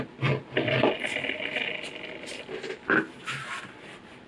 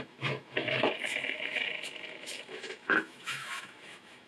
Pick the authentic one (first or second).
first